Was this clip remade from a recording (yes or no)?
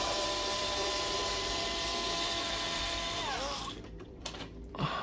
yes